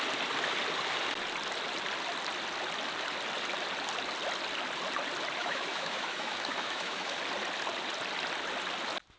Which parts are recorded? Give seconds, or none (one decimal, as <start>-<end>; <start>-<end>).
0.0-5.4; 7.2-9.2